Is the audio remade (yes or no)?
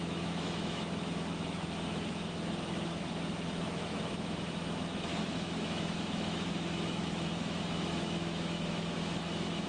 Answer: yes